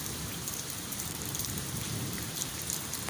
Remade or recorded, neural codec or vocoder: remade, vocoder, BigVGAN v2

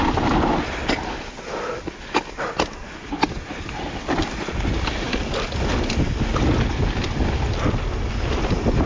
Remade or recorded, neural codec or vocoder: recorded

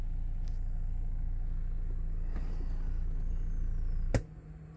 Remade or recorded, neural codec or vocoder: recorded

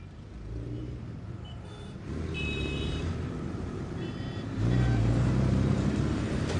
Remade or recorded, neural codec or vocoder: remade, vocoder, BigVGAN v2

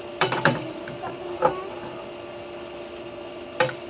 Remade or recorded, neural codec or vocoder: remade, vocoder, BigVGAN v2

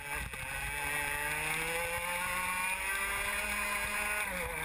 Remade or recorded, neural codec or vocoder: recorded